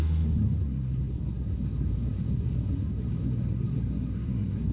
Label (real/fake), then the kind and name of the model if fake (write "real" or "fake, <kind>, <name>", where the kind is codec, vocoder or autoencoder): fake, codec, SNAC